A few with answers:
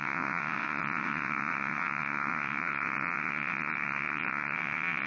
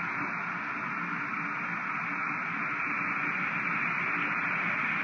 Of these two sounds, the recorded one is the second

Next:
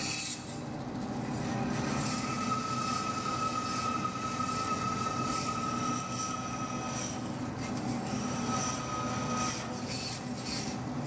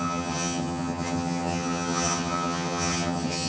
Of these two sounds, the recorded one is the first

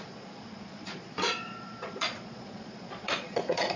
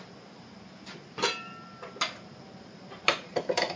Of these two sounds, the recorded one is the second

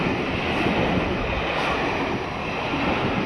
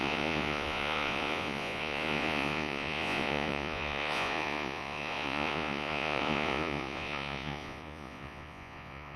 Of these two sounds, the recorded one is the first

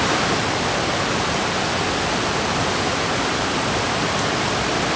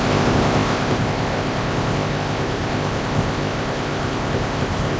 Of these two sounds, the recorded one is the first